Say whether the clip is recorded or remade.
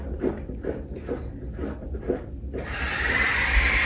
recorded